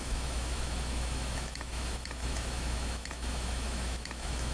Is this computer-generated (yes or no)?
yes